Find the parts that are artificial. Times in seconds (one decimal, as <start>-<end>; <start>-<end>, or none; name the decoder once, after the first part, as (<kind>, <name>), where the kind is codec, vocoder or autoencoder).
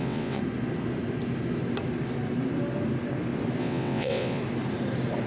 0.0-0.4 (vocoder, WaveNeXt); 3.6-4.4